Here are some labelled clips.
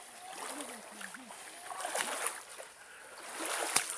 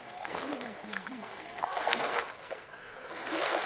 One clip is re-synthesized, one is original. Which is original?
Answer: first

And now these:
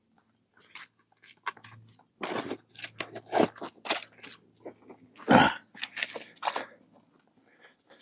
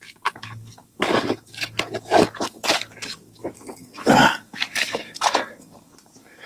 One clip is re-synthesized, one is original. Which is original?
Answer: first